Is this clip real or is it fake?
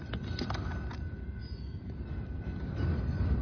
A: real